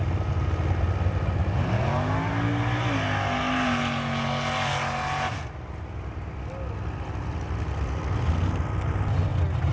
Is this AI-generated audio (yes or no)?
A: no